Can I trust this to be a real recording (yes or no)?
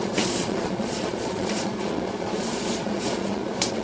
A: no